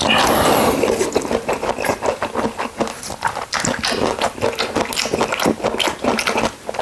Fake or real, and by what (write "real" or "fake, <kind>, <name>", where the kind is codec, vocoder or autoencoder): real